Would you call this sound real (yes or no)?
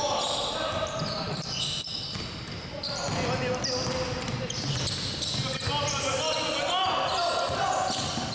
yes